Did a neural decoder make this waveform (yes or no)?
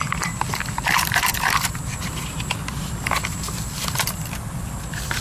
yes